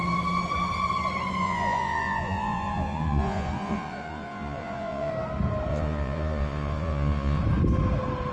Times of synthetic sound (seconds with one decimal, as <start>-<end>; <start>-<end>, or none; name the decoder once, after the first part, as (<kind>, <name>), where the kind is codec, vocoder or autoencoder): 1.4-5.1 (vocoder, Vocos); 5.7-7.4